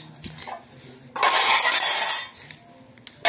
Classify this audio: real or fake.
real